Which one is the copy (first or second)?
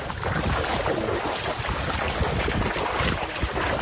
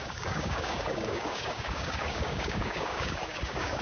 second